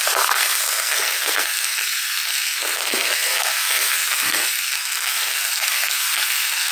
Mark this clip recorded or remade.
remade